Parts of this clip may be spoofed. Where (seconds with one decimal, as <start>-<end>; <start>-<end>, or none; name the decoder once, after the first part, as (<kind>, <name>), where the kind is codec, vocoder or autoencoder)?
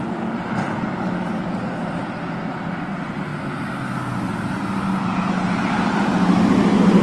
none